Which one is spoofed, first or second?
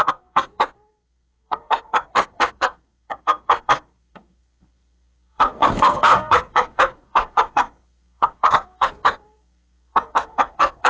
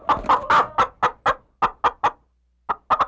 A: first